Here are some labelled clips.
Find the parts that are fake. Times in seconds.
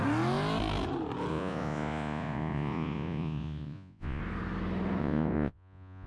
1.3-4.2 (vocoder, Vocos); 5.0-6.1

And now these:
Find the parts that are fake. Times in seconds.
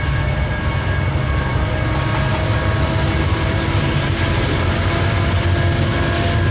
none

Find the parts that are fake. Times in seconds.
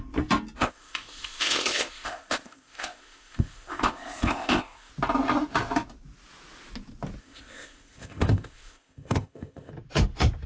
0.6-4.9 (codec, ZipCodec); 7.2-9.7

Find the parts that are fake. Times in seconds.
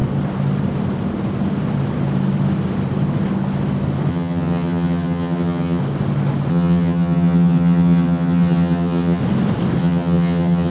4.1-5.8 (vocoder, HiFi-GAN); 6.5-9.2; 9.8-10.7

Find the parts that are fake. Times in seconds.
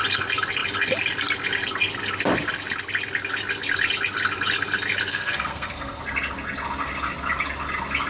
5.1-6.0 (codec, SNAC)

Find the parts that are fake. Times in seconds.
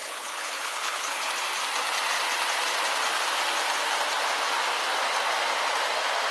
0.0-1.3 (codec, HILCodec)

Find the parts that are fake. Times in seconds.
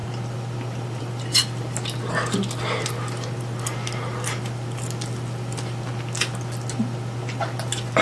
none